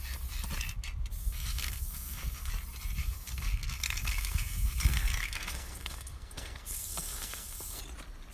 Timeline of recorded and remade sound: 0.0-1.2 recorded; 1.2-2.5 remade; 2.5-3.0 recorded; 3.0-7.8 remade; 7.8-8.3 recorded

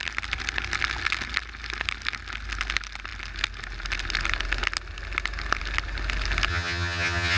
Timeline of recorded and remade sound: 0.0-6.5 recorded; 6.5-7.4 remade

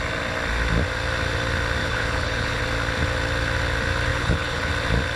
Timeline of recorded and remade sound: 0.0-1.8 recorded; 1.8-2.6 remade; 2.6-4.1 recorded; 4.1-4.7 remade; 4.7-5.2 recorded

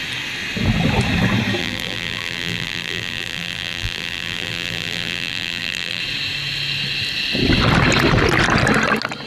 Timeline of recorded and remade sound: 0.0-1.6 recorded; 1.6-6.0 remade; 6.0-9.3 recorded

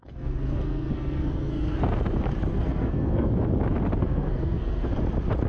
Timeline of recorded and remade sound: 0.0-2.0 remade; 2.0-2.5 recorded; 2.5-3.3 remade; 3.3-4.0 recorded; 4.0-4.9 remade; 4.9-5.5 recorded

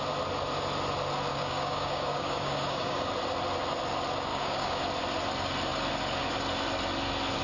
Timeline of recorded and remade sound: 0.0-1.3 recorded; 1.3-3.1 remade; 3.1-4.3 recorded; 4.3-4.8 remade; 4.8-7.4 recorded

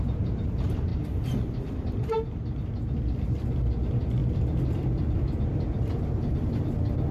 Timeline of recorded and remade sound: 0.0-0.9 recorded; 0.9-2.0 remade; 2.0-4.2 recorded; 4.2-7.1 remade

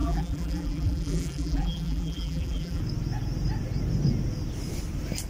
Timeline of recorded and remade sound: 0.0-2.8 remade; 2.8-5.3 recorded